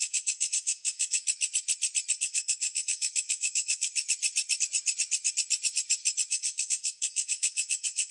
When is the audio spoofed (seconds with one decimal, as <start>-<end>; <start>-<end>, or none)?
0.0-1.2; 2.2-3.9; 6.3-8.1

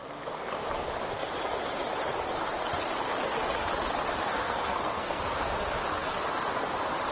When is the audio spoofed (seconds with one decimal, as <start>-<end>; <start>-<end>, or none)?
4.3-5.3